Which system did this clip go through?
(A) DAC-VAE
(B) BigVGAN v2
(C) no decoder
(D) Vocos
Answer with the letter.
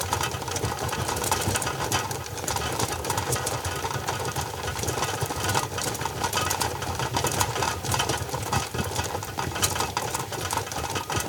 B